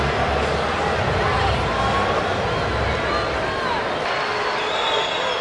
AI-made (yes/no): no